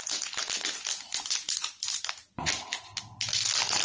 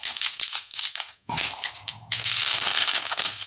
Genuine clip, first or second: first